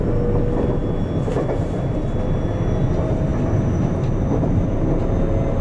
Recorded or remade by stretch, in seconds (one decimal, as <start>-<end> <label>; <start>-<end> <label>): 0.0-3.3 recorded; 3.3-5.0 remade; 5.0-5.6 recorded